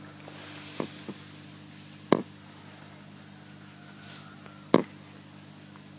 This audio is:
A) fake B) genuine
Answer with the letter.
B